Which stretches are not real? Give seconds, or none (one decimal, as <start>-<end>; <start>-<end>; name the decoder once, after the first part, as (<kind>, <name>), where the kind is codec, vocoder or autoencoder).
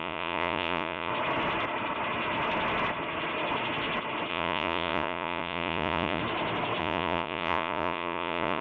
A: 0.0-1.1 (vocoder, Vocos); 4.3-6.2; 6.8-8.6